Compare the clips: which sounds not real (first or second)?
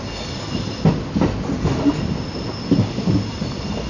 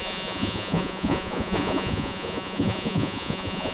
second